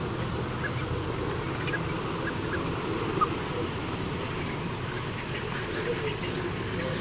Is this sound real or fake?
real